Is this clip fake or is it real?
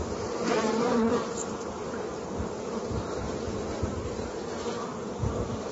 fake